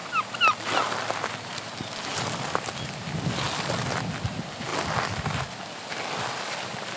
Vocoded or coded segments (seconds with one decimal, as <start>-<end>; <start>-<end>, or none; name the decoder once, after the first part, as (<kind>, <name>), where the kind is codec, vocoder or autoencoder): none